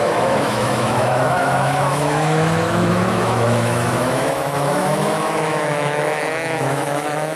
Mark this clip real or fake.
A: fake